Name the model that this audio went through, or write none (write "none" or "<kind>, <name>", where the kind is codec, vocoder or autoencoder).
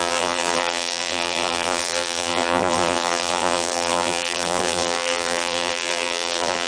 vocoder, BigVGAN v2